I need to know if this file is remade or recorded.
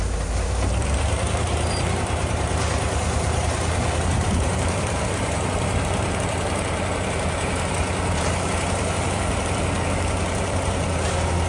remade